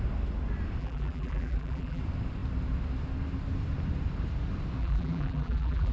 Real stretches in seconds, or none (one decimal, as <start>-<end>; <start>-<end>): 0.0-0.8; 2.0-4.8